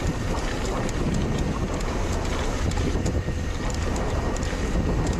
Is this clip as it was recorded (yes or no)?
yes